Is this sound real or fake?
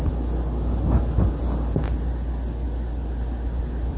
real